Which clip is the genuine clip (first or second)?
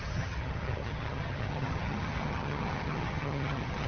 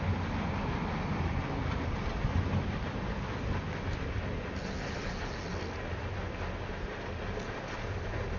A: second